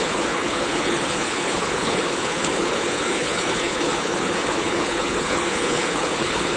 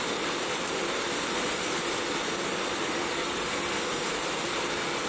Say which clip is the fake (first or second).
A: first